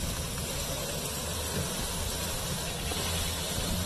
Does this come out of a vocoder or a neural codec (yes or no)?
no